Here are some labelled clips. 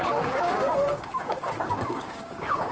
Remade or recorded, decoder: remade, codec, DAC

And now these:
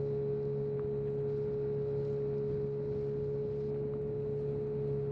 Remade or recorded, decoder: recorded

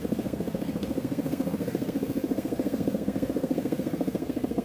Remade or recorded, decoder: remade, codec, SNAC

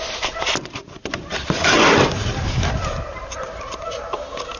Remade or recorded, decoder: remade, vocoder, BigVGAN v2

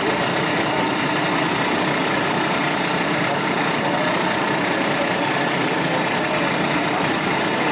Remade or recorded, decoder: recorded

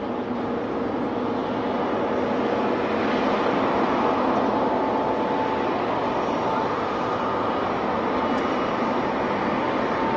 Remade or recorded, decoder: recorded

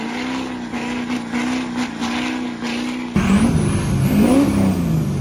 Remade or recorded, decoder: recorded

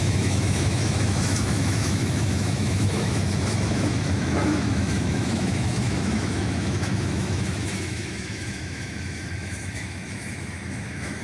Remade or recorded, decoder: remade, autoencoder, DAC-VAE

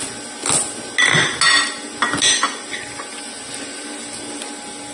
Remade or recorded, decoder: recorded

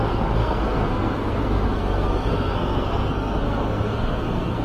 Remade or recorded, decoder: remade, codec, SNAC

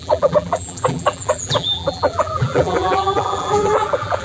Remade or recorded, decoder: remade, vocoder, BigVGAN v2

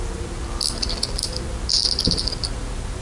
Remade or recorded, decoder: recorded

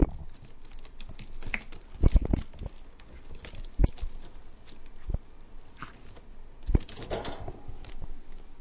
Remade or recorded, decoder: recorded